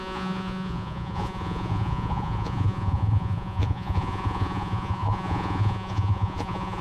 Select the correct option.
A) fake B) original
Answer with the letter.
A